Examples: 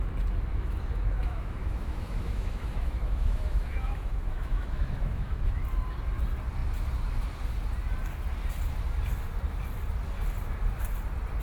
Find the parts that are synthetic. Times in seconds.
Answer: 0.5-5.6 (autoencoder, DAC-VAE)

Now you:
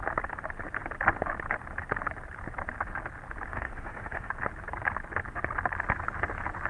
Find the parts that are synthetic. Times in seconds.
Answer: 3.5-4.3 (autoencoder, DAC-VAE)